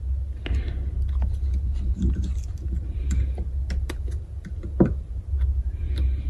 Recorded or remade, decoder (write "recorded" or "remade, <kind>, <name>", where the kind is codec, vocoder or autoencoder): recorded